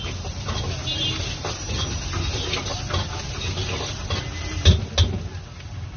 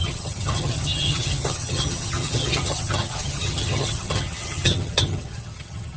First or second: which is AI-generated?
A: second